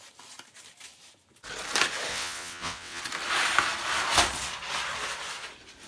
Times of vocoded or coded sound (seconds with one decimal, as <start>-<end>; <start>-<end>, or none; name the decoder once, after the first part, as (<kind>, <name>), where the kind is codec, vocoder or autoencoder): 2.1-3.0 (vocoder, WaveNeXt)